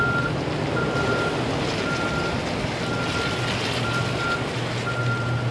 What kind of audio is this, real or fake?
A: real